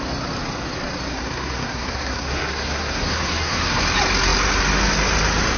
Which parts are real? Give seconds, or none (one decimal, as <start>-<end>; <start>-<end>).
0.0-1.1; 3.8-5.6